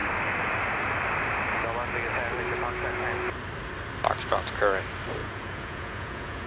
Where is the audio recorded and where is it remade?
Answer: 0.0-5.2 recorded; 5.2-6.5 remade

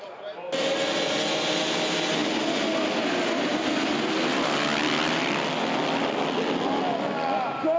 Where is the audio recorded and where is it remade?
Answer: 0.0-7.8 recorded

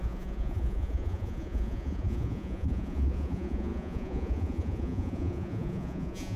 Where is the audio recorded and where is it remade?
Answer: 0.0-6.4 remade

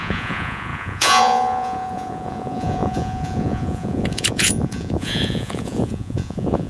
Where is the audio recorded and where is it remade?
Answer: 0.0-6.7 remade

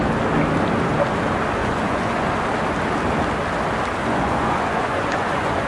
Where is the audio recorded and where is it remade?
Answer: 0.0-1.6 recorded; 1.6-2.3 remade; 2.3-4.0 recorded; 4.0-5.7 remade

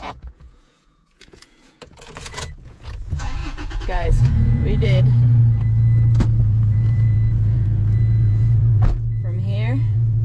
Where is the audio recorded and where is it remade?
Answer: 0.0-5.4 remade; 5.4-6.4 recorded; 6.4-10.2 remade